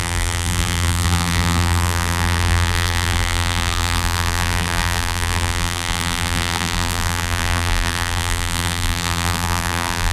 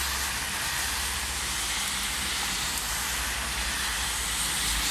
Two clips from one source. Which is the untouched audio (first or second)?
second